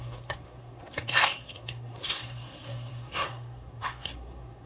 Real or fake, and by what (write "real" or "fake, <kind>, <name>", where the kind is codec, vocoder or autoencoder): fake, codec, SNAC